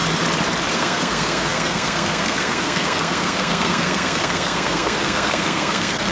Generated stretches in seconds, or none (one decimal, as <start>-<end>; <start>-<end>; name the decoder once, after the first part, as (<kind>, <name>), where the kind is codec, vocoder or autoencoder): 0.7-6.1 (codec, SNAC)